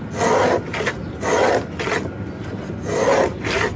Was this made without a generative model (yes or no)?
yes